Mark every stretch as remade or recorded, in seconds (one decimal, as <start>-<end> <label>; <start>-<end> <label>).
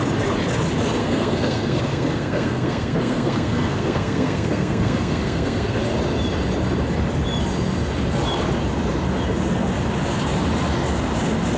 0.0-1.0 recorded; 1.0-5.8 remade; 5.8-11.6 recorded